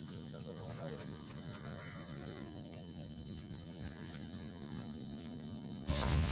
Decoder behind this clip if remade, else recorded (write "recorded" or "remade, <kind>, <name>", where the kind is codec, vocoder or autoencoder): remade, vocoder, Vocos